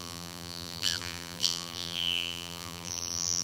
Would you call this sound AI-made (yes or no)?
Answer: yes